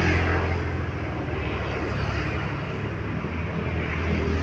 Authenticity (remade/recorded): recorded